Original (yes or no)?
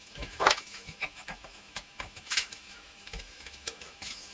no